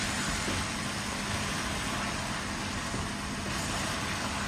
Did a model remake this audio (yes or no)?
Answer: no